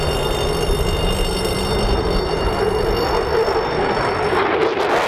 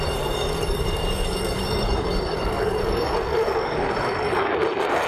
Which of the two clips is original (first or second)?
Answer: first